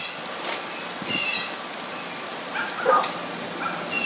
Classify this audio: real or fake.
real